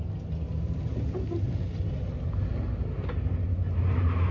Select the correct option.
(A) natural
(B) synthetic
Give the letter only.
A